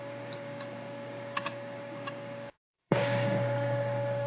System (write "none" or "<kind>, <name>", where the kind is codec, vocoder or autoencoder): codec, DAC